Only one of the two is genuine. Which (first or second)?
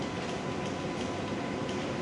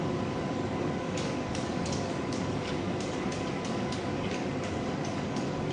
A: first